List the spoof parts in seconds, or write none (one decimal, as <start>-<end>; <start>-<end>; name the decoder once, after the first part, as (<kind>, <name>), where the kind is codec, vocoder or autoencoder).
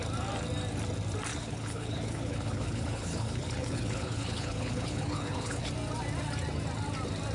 1.3-5.7 (codec, HILCodec)